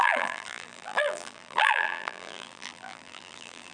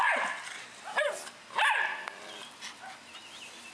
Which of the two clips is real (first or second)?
second